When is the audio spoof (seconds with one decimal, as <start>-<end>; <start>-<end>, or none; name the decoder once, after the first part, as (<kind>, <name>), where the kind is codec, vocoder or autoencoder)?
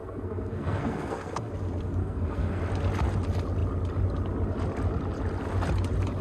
0.0-1.5 (codec, SNAC); 2.0-2.6